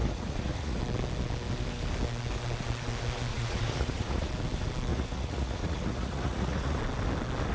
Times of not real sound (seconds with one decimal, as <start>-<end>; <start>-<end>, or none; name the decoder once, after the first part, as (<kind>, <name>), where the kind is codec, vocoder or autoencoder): 0.0-0.8 (vocoder, Vocos); 3.3-4.3; 4.9-6.8